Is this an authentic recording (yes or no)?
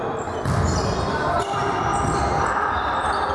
yes